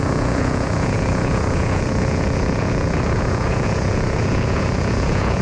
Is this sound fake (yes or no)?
yes